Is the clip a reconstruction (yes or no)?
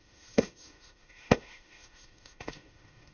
yes